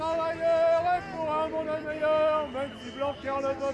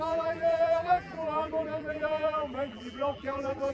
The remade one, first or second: second